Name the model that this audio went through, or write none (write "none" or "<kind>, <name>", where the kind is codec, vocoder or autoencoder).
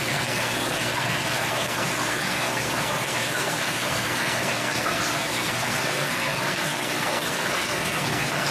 codec, SNAC